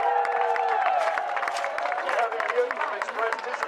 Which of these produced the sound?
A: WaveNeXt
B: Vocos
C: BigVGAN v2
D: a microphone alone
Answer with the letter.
C